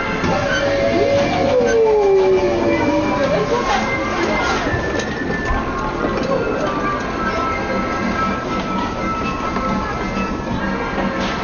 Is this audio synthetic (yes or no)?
no